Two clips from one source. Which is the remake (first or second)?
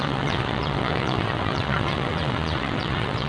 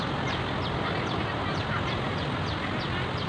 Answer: first